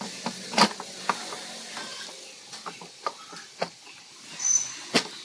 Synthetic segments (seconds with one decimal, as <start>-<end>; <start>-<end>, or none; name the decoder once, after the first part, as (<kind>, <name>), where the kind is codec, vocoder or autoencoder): none